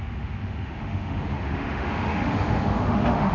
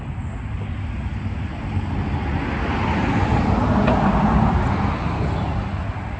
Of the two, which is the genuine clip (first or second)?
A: second